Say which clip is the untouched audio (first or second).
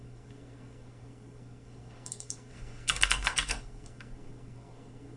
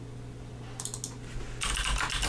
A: second